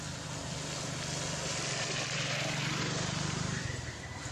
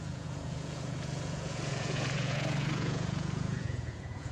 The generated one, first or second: second